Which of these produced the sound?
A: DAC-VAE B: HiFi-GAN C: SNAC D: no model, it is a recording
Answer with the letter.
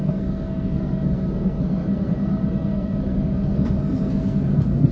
C